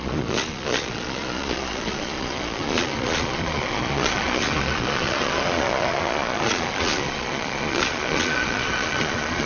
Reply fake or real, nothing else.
fake